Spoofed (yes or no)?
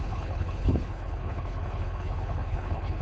yes